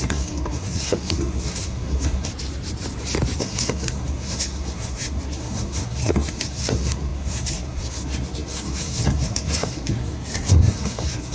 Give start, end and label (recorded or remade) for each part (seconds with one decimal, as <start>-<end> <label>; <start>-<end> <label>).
0.0-2.3 remade; 2.3-3.4 recorded; 3.4-11.3 remade